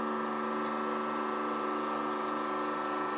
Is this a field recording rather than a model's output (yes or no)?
yes